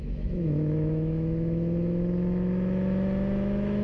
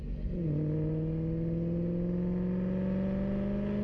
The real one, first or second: second